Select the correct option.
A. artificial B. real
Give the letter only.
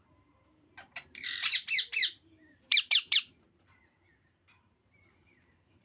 A